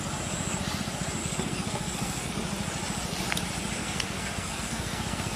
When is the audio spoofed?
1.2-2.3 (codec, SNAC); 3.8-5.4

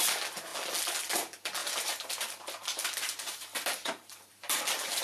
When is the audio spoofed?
1.6-4.6 (vocoder, BigVGAN v2)

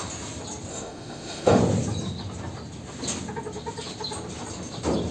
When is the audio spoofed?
0.7-1.6 (autoencoder, DAC-VAE)

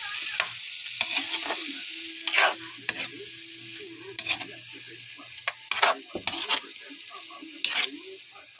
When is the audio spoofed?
none

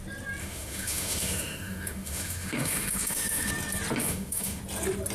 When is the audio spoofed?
0.4-3.5 (autoencoder, DAC-VAE); 4.0-4.6

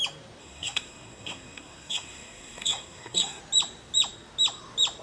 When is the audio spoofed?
0.4-3.4 (codec, SNAC)